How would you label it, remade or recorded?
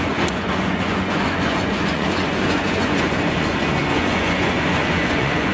remade